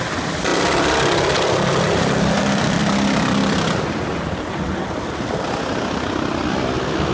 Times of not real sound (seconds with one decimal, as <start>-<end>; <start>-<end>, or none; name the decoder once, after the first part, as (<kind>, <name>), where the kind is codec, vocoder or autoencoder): none